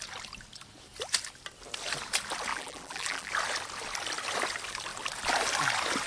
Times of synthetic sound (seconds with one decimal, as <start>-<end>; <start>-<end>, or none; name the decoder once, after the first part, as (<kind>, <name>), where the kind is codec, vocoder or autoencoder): 2.5-3.3 (vocoder, BigVGAN v2)